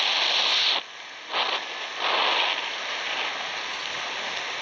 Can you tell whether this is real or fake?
real